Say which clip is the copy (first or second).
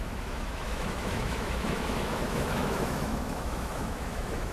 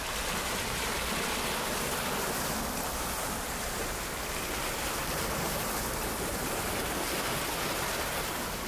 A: first